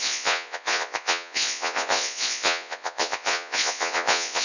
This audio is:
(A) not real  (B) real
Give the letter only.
A